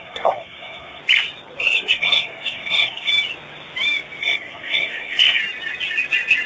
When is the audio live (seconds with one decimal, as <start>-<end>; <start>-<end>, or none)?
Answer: 1.0-1.6; 3.1-4.2; 5.4-6.5